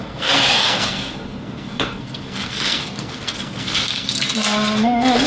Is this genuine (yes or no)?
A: no